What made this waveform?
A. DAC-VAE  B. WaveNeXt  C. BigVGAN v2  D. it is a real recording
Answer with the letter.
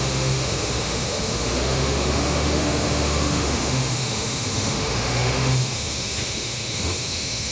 A